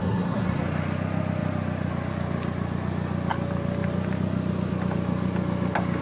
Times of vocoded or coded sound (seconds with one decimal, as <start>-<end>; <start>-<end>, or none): 0.0-0.6